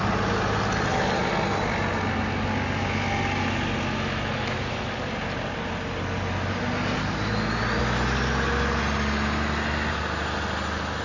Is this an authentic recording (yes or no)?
yes